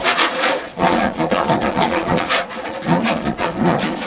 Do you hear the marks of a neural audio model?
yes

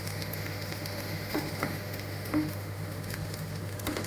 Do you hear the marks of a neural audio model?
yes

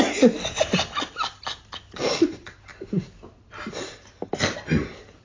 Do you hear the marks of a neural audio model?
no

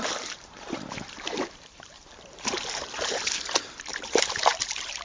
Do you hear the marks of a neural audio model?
yes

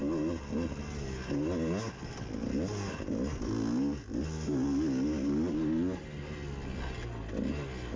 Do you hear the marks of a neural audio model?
no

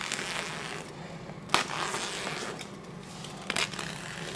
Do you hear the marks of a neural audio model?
no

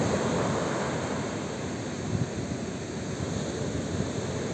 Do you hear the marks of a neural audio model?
no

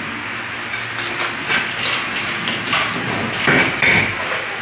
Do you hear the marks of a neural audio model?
no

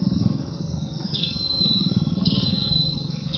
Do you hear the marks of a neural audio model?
yes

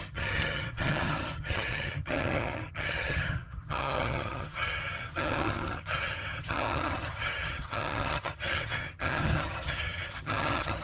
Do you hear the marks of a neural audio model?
yes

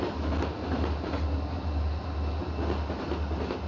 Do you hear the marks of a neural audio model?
no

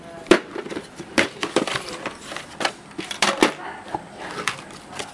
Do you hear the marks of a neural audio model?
no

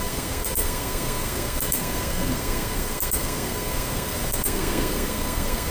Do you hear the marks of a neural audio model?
yes